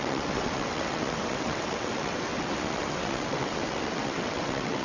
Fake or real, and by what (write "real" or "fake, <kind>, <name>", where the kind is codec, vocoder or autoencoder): fake, vocoder, WaveNeXt